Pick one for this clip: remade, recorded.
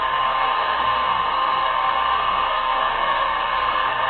remade